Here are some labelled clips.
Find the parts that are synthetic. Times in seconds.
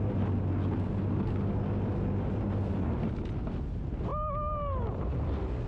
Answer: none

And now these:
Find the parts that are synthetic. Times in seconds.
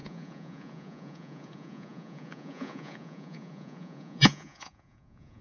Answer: 0.0-5.4 (vocoder, Vocos)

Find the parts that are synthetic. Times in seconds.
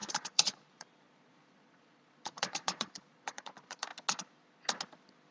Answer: 0.0-3.9 (vocoder, Vocos)